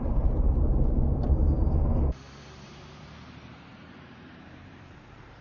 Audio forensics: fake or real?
fake